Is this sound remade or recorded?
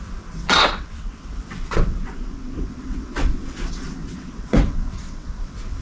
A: remade